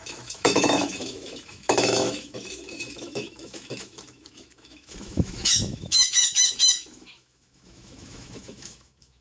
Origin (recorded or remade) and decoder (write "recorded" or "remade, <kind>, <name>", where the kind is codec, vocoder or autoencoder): remade, autoencoder, DAC-VAE